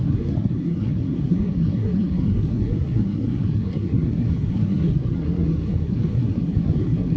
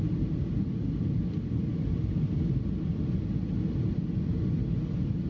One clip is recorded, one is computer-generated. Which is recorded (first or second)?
second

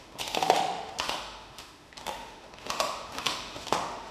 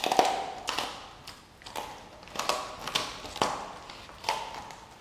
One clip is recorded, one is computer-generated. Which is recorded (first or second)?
second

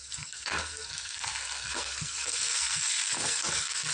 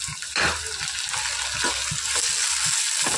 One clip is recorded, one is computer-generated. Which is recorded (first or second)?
second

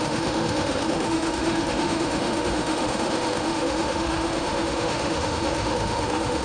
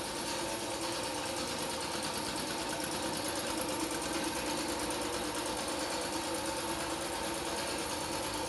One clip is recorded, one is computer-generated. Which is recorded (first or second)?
second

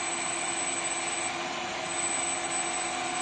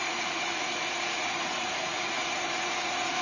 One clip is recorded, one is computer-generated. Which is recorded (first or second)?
first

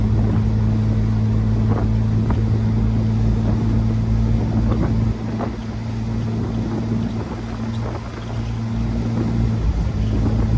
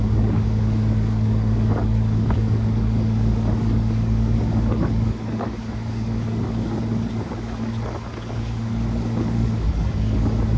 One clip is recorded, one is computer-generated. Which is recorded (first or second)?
first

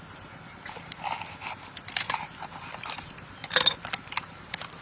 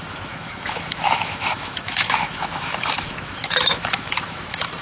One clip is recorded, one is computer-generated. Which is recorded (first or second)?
first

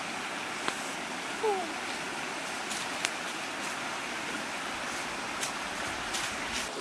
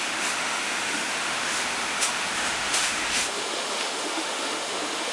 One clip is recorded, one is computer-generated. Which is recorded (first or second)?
first